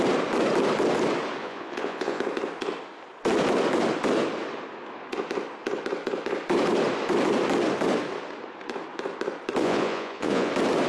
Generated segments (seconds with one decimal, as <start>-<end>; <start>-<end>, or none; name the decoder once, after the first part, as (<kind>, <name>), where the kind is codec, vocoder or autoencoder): 1.4-2.2 (vocoder, Vocos); 9.6-10.5